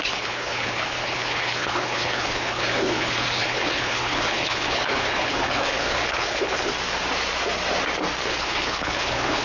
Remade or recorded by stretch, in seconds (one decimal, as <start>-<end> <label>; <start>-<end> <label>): 0.0-6.7 remade; 6.7-8.2 recorded; 8.2-9.4 remade